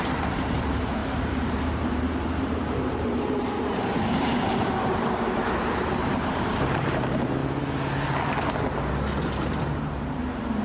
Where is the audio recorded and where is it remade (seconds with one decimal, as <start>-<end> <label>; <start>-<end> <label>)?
0.0-7.4 remade; 7.4-9.7 recorded; 9.7-10.6 remade